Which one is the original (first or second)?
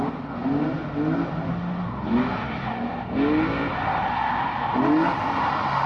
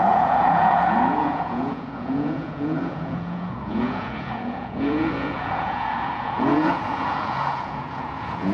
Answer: first